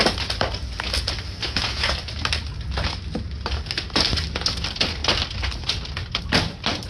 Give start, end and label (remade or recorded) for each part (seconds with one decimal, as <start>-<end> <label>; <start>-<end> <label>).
0.0-1.4 recorded; 1.4-1.9 remade; 1.9-6.9 recorded